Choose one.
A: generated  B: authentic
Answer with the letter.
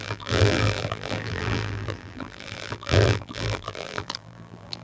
A